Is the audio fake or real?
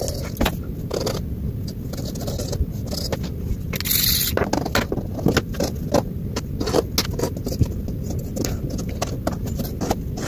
real